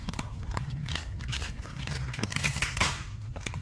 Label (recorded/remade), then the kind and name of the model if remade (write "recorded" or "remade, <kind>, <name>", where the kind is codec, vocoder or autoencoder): remade, codec, SNAC